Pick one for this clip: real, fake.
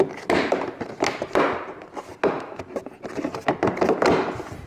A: real